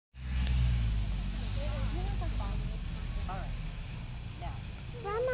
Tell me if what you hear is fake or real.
real